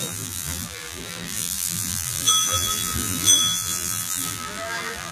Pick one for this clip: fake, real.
fake